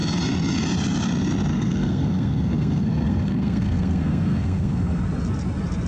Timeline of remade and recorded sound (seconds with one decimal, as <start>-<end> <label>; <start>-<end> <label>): 0.0-1.5 recorded; 1.5-5.0 remade; 5.0-5.9 recorded